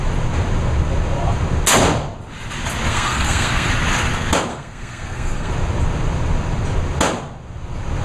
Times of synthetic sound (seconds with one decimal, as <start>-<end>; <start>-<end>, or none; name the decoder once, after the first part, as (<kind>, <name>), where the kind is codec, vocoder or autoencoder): 2.9-3.7 (codec, SNAC); 4.5-5.5

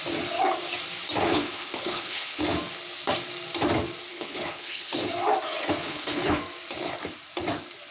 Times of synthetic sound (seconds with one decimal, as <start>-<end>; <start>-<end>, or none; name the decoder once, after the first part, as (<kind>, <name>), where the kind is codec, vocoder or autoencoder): 1.2-2.4 (codec, HILCodec); 4.1-4.9; 5.8-6.4

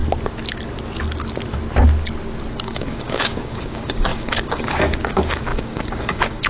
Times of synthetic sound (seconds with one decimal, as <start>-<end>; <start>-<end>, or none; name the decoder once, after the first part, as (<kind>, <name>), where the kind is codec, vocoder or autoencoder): 2.6-6.5 (codec, DAC)

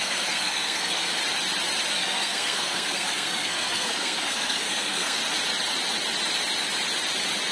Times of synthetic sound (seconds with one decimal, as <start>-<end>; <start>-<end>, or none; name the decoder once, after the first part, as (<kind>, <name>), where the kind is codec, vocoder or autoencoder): 0.0-1.2 (codec, SNAC); 1.9-5.2